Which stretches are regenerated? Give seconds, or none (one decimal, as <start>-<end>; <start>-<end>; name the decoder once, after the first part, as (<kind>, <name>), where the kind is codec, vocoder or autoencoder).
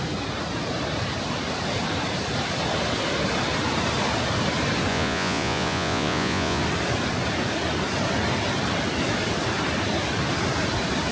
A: 4.9-6.6 (vocoder, Vocos)